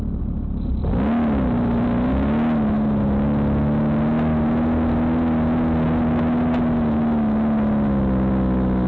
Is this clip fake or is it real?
real